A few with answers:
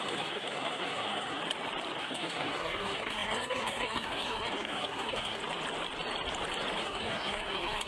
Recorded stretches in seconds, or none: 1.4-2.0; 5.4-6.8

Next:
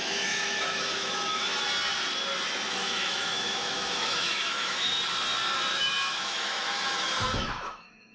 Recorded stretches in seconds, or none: 1.5-2.7; 4.9-5.7

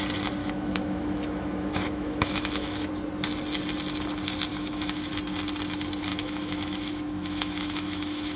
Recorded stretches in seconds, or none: 0.0-0.4; 2.9-4.5; 5.1-6.1

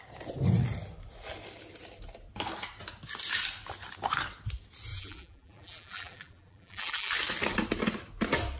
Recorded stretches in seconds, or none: 0.0-4.9; 7.1-8.6

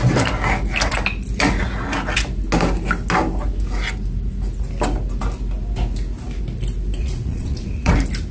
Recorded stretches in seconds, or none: 0.0-7.0; 7.9-8.3